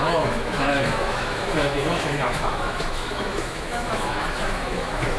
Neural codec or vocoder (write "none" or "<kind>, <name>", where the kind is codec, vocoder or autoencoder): autoencoder, DAC-VAE